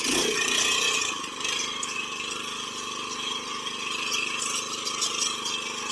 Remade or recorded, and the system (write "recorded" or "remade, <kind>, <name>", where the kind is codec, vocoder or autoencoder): recorded